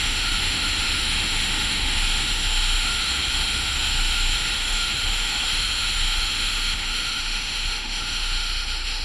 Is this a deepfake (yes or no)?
yes